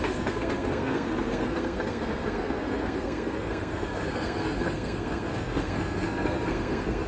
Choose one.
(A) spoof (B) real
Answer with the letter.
A